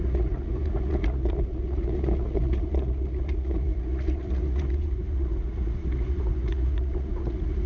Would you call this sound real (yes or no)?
no